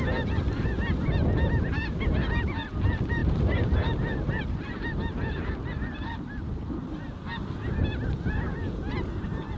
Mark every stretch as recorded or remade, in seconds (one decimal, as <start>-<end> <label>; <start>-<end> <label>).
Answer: 0.0-9.6 recorded